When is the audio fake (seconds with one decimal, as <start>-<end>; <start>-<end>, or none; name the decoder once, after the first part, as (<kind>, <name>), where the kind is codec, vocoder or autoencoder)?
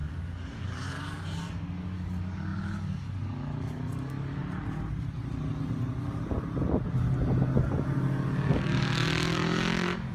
0.0-4.4 (codec, DAC); 8.5-10.1